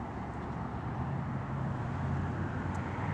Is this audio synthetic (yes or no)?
yes